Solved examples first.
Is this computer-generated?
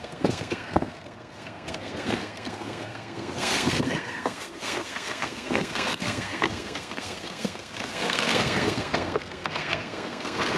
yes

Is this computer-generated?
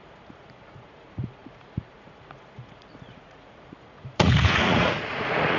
yes